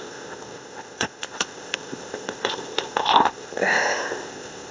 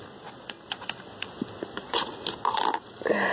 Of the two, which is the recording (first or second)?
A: second